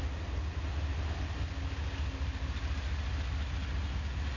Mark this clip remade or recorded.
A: recorded